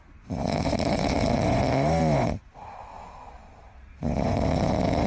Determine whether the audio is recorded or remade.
recorded